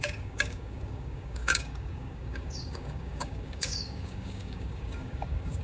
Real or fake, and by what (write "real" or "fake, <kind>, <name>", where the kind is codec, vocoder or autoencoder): fake, codec, DAC